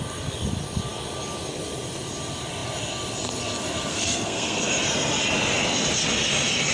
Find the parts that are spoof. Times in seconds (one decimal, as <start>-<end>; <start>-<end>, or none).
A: 3.9-4.7

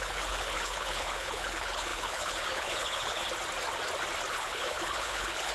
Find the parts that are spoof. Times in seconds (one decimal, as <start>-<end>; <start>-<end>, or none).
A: 0.0-3.2; 4.3-5.5

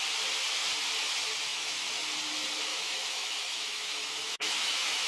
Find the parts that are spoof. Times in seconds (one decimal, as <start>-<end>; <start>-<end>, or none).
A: 1.5-2.0; 2.7-5.1

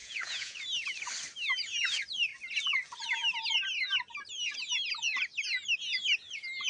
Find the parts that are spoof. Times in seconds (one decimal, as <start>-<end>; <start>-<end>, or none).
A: 0.0-0.6

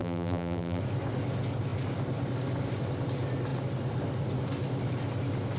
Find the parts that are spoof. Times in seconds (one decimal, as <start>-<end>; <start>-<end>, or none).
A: 0.0-0.8